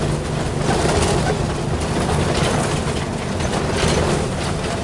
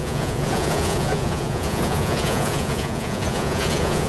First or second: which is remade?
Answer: second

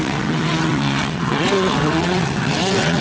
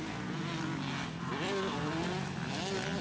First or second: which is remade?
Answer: first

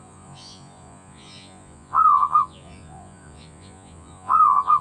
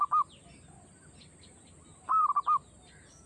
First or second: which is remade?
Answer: first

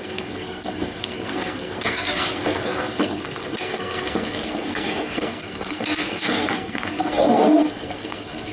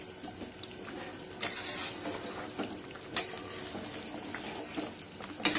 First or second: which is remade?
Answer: first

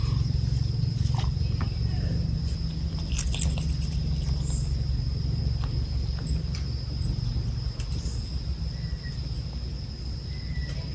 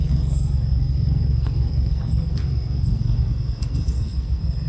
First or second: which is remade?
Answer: second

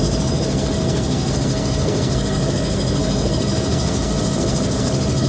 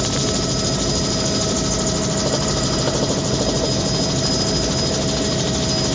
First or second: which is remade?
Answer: first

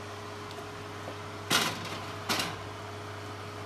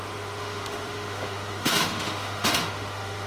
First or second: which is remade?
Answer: second